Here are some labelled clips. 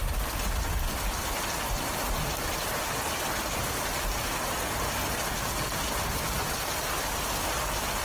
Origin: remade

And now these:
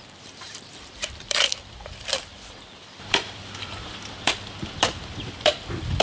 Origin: remade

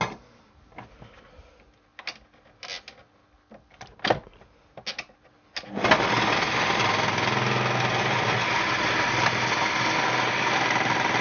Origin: recorded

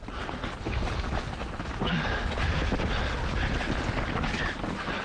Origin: recorded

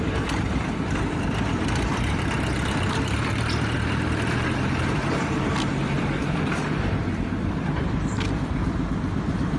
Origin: remade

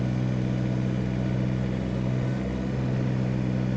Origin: recorded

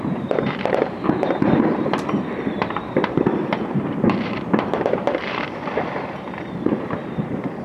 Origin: remade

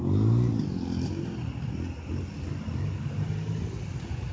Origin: recorded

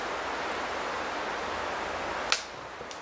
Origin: recorded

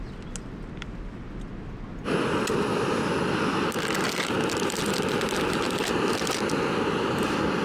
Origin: recorded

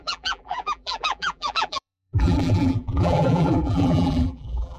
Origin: remade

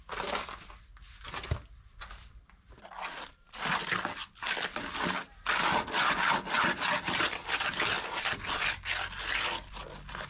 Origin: recorded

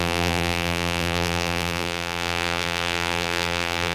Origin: remade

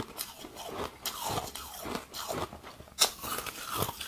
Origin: recorded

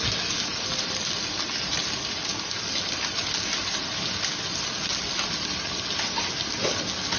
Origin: recorded